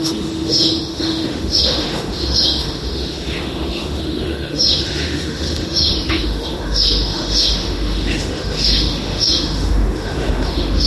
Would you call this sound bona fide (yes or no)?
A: no